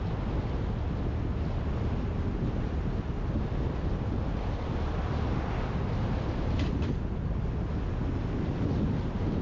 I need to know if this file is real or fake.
real